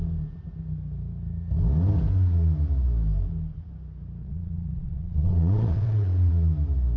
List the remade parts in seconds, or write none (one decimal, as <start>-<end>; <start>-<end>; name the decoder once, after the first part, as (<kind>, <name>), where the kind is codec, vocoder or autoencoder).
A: 4.2-6.3 (vocoder, Vocos)